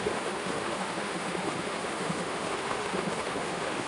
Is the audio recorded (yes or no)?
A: no